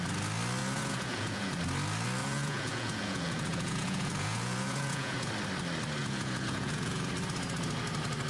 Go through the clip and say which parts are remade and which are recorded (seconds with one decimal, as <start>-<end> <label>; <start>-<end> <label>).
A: 0.0-0.6 recorded; 0.6-1.6 remade; 1.6-2.2 recorded; 2.2-5.3 remade; 5.3-6.0 recorded; 6.0-7.1 remade; 7.1-8.3 recorded